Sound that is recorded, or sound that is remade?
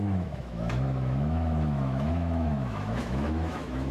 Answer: remade